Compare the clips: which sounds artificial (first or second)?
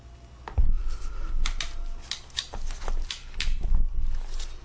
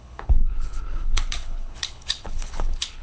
second